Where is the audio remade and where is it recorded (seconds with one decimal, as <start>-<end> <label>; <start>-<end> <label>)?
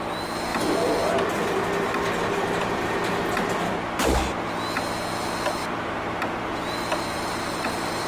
0.0-5.6 recorded; 5.6-8.1 remade